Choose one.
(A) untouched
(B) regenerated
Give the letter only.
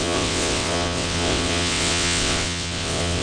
B